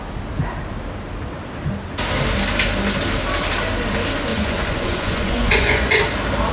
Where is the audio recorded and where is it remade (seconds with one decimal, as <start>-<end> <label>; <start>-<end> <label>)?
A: 0.0-4.3 recorded; 4.3-6.0 remade; 6.0-6.5 recorded